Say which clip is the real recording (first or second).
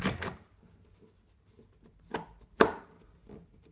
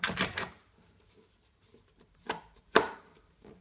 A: first